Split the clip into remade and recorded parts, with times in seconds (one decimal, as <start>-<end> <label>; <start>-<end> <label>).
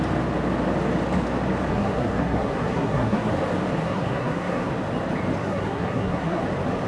0.0-1.7 recorded; 1.7-3.3 remade; 3.3-3.8 recorded; 3.8-4.7 remade; 4.7-5.4 recorded; 5.4-6.4 remade; 6.4-6.9 recorded